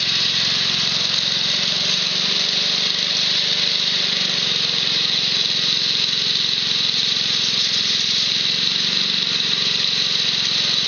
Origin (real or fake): real